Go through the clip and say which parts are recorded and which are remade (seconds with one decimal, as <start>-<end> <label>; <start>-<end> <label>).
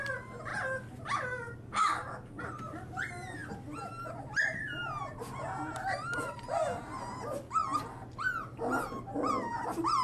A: 0.0-10.0 recorded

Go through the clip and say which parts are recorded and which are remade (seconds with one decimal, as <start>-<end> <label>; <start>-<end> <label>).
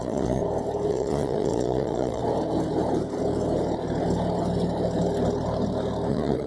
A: 0.0-0.4 remade; 0.4-0.9 recorded; 0.9-2.2 remade; 2.2-6.1 recorded; 6.1-6.5 remade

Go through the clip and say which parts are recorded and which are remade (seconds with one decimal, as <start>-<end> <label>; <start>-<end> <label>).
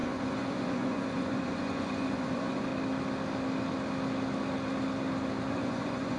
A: 0.0-2.7 remade; 2.7-5.5 recorded; 5.5-6.2 remade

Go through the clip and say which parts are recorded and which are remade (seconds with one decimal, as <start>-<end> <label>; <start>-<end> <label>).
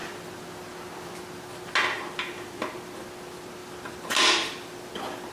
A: 0.0-5.3 recorded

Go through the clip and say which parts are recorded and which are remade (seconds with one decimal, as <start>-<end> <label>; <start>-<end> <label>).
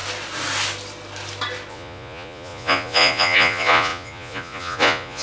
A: 0.0-1.7 recorded; 1.7-5.2 remade